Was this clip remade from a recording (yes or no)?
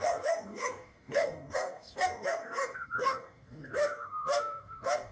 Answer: yes